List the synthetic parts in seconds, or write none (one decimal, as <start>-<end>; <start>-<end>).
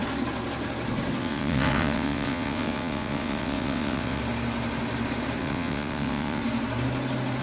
1.2-4.2; 5.4-6.4